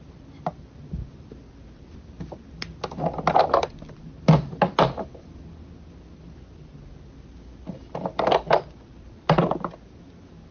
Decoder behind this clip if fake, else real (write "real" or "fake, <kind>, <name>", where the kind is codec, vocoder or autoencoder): real